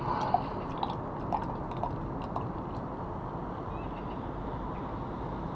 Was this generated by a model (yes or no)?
no